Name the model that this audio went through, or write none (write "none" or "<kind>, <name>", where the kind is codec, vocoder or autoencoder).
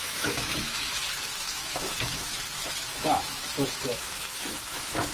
autoencoder, DAC-VAE